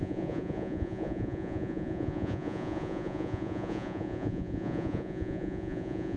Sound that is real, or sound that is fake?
fake